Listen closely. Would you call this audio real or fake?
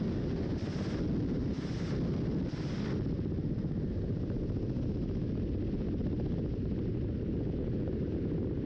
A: real